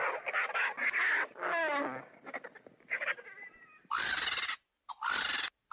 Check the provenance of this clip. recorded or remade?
recorded